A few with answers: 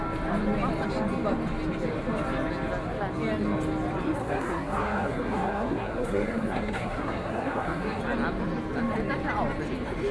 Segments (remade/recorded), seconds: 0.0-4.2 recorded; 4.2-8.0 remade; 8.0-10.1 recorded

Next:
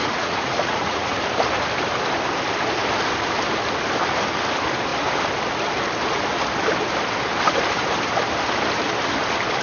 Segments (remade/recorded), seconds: 0.0-1.2 remade; 1.2-9.6 recorded

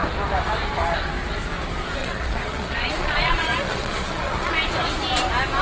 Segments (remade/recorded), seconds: 0.0-2.0 recorded; 2.0-4.5 remade; 4.5-5.6 recorded

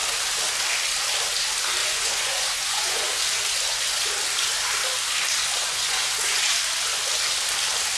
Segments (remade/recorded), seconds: 0.0-1.8 recorded; 1.8-3.2 remade; 3.2-5.6 recorded; 5.6-6.5 remade; 6.5-8.0 recorded